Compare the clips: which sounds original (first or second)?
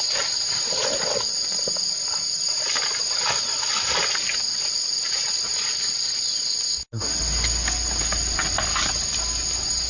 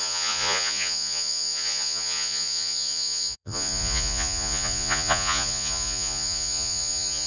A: first